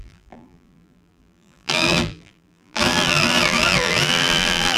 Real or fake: fake